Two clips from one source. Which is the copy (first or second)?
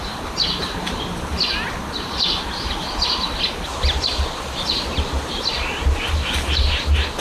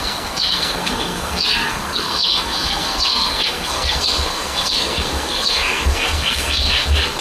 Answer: second